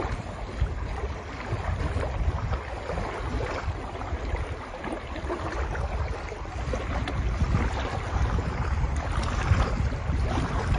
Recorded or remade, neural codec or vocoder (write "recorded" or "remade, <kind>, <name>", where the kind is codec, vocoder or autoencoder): recorded